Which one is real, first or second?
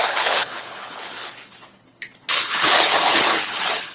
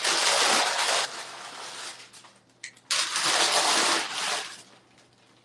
second